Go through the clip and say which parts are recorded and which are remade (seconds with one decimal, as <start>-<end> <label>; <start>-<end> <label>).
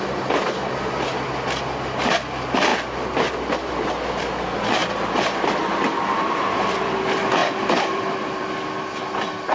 0.0-4.8 recorded; 4.8-7.0 remade; 7.0-7.4 recorded; 7.4-8.5 remade; 8.5-9.5 recorded